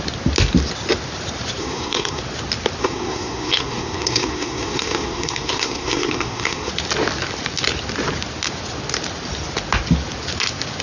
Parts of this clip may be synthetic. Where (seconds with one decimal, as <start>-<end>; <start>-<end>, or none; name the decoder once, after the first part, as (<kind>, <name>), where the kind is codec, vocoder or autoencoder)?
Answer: 1.6-2.2 (codec, SNAC); 2.8-6.7